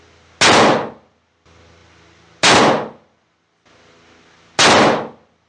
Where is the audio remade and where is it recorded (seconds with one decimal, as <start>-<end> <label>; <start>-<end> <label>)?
0.0-5.5 recorded